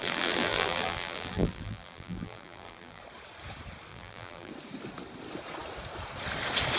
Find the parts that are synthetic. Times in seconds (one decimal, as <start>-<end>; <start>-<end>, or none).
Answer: 0.0-3.0; 3.9-4.5